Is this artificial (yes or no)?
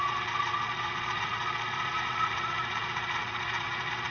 yes